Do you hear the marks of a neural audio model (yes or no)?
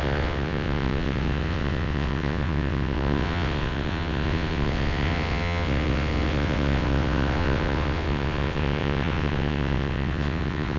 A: yes